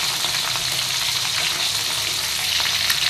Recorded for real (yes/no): yes